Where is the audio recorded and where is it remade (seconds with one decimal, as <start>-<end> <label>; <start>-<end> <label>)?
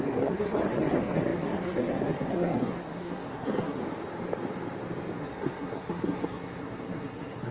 0.0-3.8 remade; 3.8-5.2 recorded; 5.2-7.5 remade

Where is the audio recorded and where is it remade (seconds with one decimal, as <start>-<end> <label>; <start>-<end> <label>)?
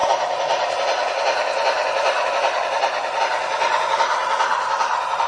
0.0-5.3 recorded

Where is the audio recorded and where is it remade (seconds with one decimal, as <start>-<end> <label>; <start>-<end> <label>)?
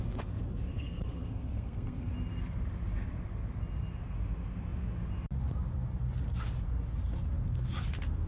0.0-0.7 recorded; 0.7-2.1 remade; 2.1-8.3 recorded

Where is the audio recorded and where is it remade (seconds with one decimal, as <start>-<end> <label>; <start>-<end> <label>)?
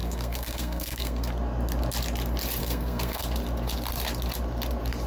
0.0-1.3 remade; 1.3-2.6 recorded; 2.6-3.2 remade; 3.2-5.1 recorded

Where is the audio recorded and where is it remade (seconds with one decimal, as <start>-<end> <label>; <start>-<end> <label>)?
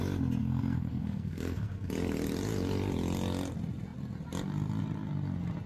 0.0-0.4 recorded; 0.4-1.9 remade; 1.9-5.7 recorded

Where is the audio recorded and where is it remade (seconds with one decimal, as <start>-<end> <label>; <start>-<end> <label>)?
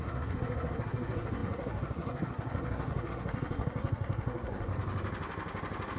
0.0-4.7 remade; 4.7-6.0 recorded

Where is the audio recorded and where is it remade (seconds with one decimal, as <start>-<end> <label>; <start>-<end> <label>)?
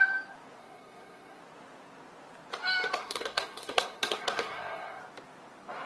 0.0-0.6 recorded; 0.6-1.4 remade; 1.4-3.0 recorded; 3.0-5.0 remade; 5.0-5.9 recorded